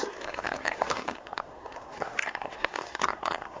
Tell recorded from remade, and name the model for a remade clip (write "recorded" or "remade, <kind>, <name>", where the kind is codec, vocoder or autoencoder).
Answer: remade, codec, SNAC